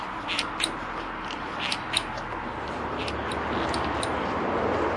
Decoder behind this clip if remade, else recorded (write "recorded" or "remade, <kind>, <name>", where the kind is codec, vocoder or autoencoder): recorded